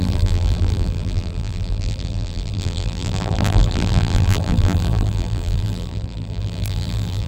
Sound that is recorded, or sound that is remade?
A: remade